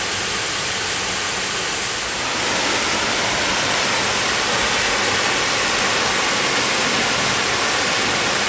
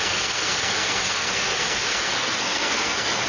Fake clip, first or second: second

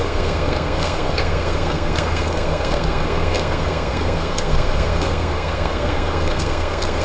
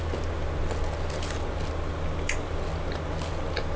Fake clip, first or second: first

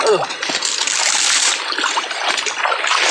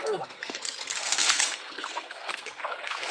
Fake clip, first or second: second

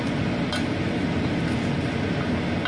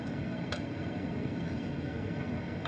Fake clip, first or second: second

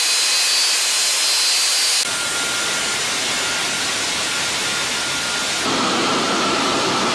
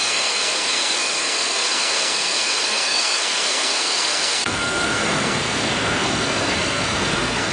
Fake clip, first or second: second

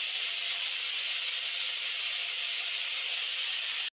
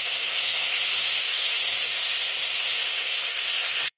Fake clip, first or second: second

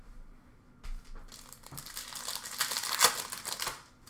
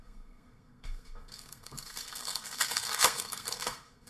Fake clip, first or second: second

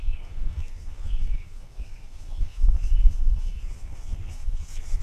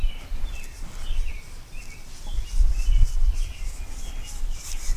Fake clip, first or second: first